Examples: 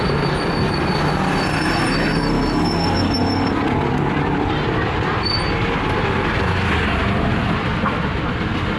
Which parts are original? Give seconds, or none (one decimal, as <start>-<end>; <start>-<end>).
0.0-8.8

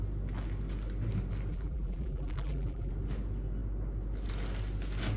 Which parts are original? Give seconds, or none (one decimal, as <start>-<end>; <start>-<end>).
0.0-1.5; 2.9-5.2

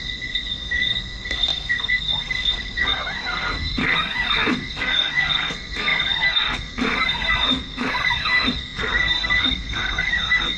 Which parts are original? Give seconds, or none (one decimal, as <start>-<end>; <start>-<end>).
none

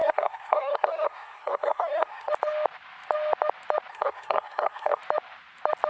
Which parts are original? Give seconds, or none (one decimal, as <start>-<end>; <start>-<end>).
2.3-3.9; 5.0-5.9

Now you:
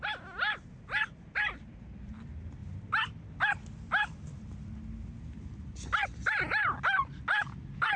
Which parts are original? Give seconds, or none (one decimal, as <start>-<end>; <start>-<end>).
0.0-8.0

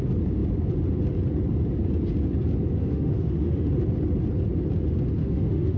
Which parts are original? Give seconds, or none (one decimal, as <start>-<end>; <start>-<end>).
0.0-2.8; 3.7-5.2

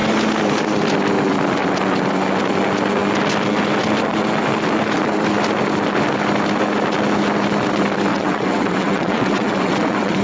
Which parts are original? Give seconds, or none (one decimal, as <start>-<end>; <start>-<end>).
0.0-8.1